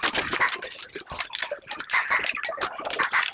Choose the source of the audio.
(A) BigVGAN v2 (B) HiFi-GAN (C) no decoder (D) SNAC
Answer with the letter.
A